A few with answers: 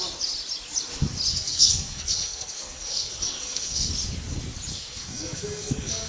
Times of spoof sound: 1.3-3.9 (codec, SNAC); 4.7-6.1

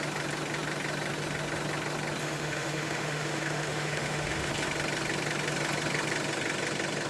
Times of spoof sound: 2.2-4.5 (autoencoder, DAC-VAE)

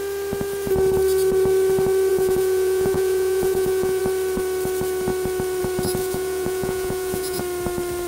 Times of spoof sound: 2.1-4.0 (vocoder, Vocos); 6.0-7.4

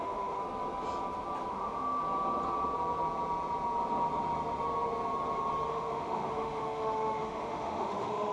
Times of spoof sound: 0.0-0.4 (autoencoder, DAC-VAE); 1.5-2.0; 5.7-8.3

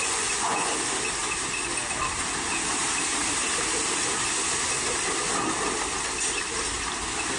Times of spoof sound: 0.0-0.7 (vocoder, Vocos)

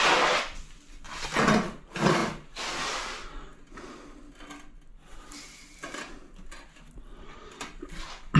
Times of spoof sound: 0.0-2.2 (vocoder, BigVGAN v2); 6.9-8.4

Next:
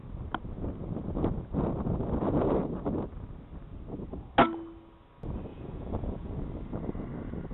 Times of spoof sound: 5.5-6.3 (vocoder, Vocos)

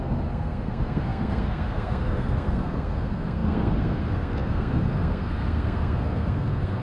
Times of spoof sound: 0.0-6.8 (codec, SNAC)